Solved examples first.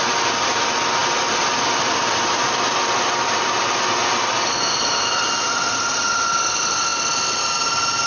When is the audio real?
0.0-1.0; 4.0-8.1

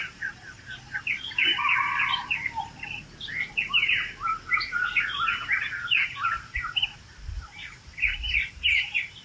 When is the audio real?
0.0-9.2

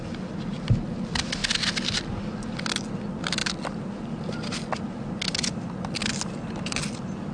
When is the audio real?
0.0-7.3